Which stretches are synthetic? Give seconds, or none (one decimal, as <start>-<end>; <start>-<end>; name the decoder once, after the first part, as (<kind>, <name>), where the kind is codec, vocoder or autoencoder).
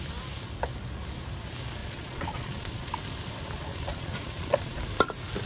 1.8-2.9 (vocoder, Vocos); 3.7-4.8